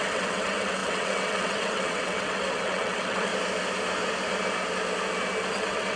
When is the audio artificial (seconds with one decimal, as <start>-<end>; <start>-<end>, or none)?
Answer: 0.0-3.3; 5.5-6.0